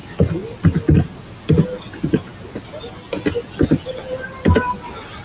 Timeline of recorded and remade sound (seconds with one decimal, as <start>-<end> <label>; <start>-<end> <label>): 0.0-5.2 recorded